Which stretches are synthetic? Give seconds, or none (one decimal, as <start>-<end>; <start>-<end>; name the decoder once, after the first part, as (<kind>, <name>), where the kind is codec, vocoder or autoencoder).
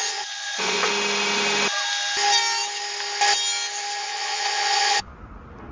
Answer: 0.0-0.9 (vocoder, Vocos); 4.0-5.1